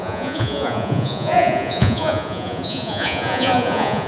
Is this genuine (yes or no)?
no